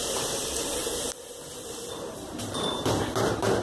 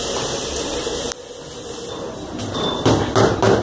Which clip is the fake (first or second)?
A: first